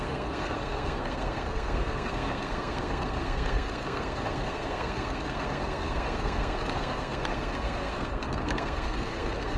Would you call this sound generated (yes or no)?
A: yes